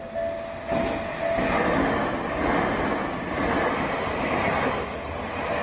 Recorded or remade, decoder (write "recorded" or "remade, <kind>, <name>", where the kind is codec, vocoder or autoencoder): recorded